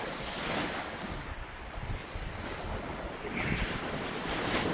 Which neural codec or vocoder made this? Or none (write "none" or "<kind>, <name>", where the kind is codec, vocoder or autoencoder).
none